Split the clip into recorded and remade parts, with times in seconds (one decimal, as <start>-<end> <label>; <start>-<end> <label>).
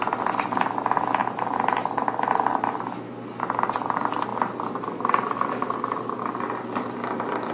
0.0-7.5 recorded